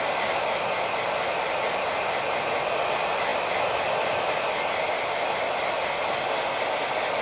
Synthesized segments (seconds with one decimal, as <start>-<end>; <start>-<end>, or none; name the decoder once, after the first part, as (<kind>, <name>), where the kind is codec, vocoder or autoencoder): none